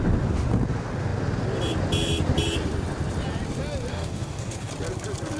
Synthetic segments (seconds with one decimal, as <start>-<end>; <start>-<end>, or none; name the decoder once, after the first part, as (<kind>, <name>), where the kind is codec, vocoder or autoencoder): 3.9-4.7 (codec, DAC)